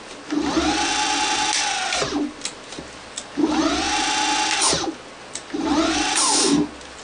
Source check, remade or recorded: recorded